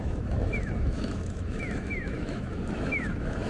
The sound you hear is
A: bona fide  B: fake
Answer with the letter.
B